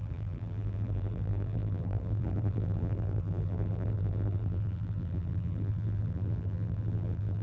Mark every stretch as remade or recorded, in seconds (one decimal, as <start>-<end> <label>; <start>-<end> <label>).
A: 0.0-7.4 remade